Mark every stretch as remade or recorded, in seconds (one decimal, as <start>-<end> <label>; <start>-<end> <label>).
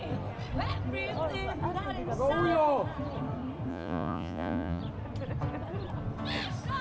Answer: 0.0-3.7 recorded; 3.7-4.8 remade; 4.8-6.8 recorded